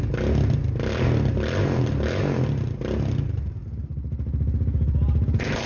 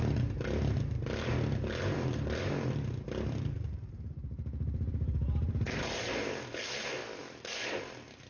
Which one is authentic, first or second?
first